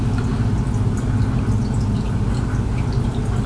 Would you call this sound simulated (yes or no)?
no